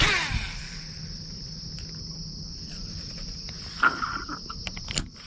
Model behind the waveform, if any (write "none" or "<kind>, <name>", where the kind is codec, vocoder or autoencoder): none